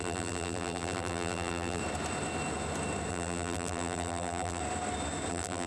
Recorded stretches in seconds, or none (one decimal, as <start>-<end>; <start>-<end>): 1.8-3.1; 4.6-5.3